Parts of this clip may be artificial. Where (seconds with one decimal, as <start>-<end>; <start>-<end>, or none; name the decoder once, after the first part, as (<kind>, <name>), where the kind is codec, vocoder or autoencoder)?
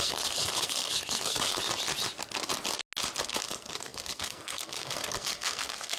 0.0-1.6 (codec, SNAC); 3.2-6.0